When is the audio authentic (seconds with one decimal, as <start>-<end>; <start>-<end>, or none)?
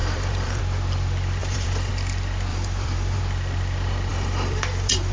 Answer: 0.6-1.4; 1.9-2.5; 3.2-4.1